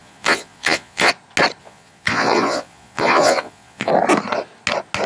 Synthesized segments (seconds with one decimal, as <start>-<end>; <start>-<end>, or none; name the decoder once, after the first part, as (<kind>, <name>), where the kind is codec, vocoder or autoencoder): 0.0-1.1 (vocoder, Vocos); 1.6-3.9